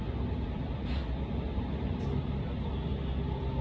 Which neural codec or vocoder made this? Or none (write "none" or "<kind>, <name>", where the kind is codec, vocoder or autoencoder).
none